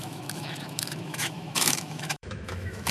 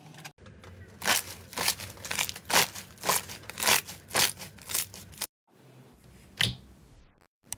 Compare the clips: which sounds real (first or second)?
second